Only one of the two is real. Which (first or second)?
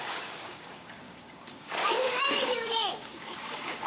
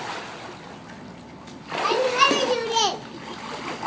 second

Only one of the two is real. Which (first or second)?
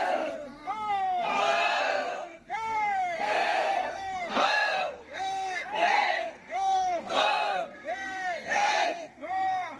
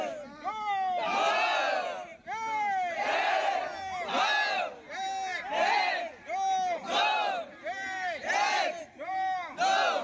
second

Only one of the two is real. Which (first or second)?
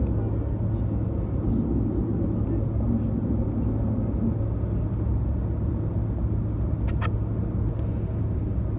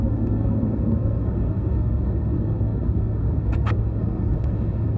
first